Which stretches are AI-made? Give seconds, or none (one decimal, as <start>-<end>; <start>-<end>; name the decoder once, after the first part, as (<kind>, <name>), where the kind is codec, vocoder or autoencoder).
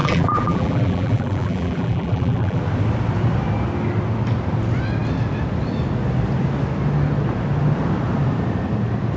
0.0-2.6 (vocoder, BigVGAN v2)